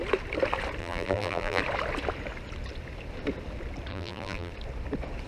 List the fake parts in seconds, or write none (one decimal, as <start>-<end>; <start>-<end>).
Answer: 0.8-1.6; 3.9-4.5